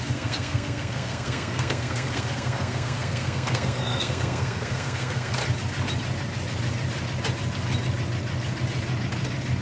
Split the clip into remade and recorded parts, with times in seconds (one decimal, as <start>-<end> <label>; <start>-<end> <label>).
0.0-5.4 remade; 5.4-9.6 recorded